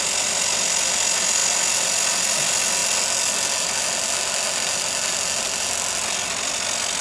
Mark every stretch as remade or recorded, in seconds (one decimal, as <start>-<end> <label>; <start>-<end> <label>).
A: 0.0-7.0 recorded